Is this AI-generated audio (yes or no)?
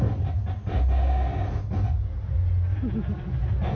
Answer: no